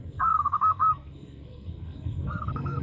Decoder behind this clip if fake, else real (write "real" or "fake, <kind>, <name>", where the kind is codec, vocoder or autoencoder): fake, codec, SNAC